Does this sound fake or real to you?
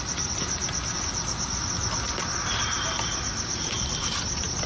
real